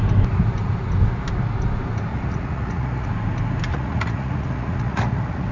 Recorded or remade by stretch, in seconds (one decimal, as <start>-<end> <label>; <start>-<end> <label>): 0.0-2.1 recorded; 2.1-3.1 remade; 3.1-3.7 recorded; 3.7-5.5 remade